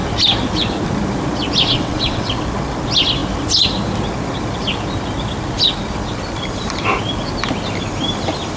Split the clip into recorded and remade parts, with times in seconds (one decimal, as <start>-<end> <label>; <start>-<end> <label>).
0.0-1.7 recorded; 1.7-2.3 remade; 2.3-8.6 recorded